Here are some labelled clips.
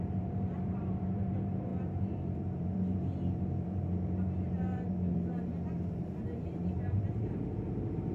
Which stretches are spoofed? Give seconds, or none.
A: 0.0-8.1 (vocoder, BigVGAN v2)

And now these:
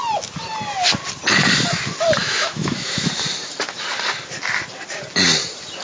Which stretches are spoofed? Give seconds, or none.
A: 2.2-3.1 (autoencoder, DAC-VAE)

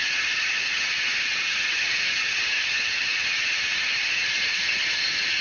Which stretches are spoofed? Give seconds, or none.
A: 0.0-5.4 (vocoder, HiFi-GAN)

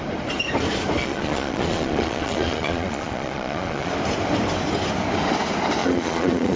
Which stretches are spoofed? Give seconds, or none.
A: 1.0-3.9 (vocoder, Vocos); 5.8-6.6

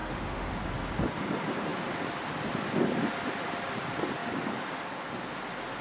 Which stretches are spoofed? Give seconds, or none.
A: 0.0-0.5 (autoencoder, DAC-VAE)